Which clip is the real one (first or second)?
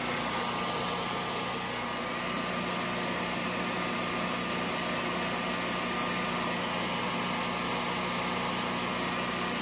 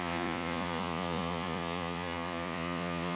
first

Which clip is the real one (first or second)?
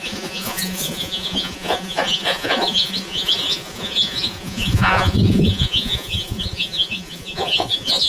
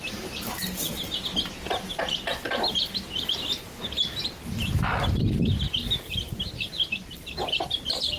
second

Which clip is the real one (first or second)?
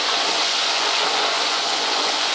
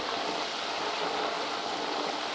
second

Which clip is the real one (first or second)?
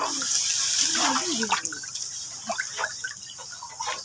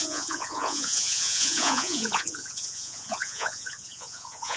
first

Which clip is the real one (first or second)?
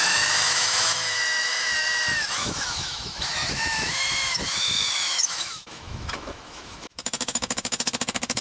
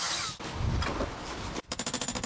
second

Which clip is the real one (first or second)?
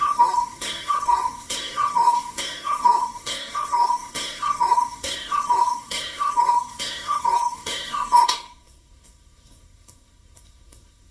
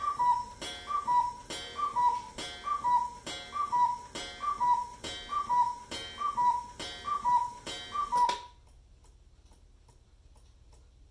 second